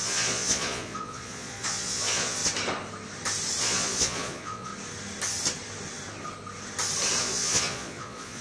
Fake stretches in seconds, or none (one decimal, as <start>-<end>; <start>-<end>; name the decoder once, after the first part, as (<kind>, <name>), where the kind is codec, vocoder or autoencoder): 0.0-2.4 (vocoder, Vocos); 3.6-4.7; 7.2-8.4